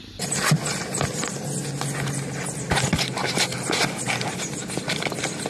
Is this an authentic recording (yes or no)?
yes